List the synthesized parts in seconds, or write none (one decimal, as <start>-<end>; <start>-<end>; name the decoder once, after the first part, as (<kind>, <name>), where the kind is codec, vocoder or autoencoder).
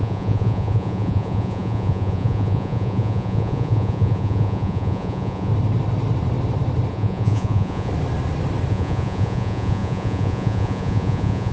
0.0-5.5 (vocoder, Vocos); 6.9-7.9; 8.7-11.5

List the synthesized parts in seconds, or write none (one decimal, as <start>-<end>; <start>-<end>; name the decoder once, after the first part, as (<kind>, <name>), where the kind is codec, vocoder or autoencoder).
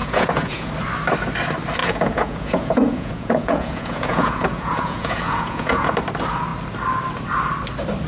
0.0-0.7 (vocoder, Vocos); 1.8-5.9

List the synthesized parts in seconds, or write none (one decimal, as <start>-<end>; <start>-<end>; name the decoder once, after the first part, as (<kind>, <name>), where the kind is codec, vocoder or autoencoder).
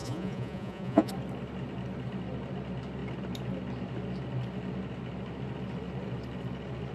0.0-1.1 (vocoder, Vocos)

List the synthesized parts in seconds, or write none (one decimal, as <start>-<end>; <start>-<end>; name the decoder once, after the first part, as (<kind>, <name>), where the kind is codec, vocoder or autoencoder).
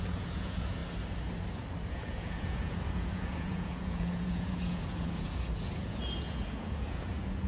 0.0-0.8 (vocoder, Vocos); 1.9-7.5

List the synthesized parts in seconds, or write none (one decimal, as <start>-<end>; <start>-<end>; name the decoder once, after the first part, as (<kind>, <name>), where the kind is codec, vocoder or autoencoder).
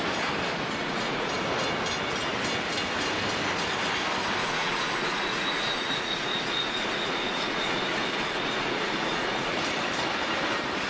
0.8-1.3 (vocoder, Vocos); 4.4-9.6